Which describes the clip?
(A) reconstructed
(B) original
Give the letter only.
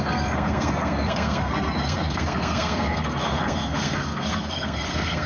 A